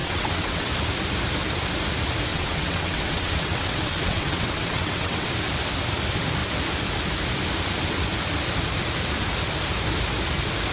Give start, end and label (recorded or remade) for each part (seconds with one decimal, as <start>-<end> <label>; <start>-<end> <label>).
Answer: 0.0-0.7 remade; 0.7-2.3 recorded; 2.3-5.3 remade; 5.3-10.7 recorded